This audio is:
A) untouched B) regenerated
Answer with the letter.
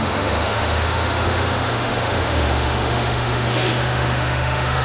B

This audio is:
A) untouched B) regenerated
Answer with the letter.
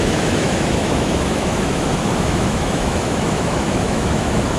B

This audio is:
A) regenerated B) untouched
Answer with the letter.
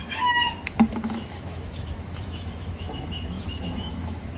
A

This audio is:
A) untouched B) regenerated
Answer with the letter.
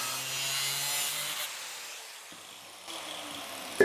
A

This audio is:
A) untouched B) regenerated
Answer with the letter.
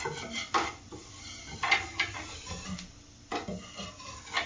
A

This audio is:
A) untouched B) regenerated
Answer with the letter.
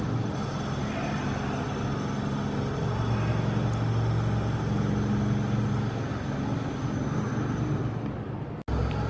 A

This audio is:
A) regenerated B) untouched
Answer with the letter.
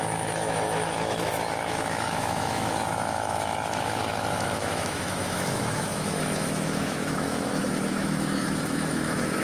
A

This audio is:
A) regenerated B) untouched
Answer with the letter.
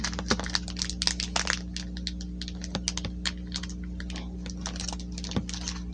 B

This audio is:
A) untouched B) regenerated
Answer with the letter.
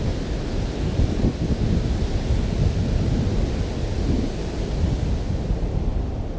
A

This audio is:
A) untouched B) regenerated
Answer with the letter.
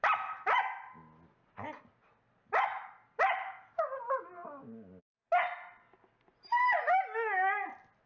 A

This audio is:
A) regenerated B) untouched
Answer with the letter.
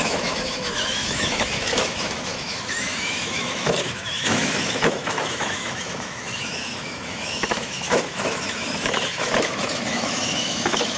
A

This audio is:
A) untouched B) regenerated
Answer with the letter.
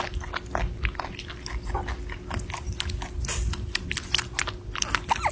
A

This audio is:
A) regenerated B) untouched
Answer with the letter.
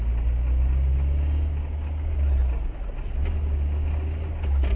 B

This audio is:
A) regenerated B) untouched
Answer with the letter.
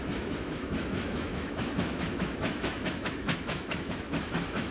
A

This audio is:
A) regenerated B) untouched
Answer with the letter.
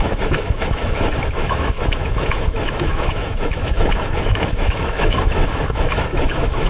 A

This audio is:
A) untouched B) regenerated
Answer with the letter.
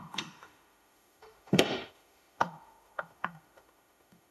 B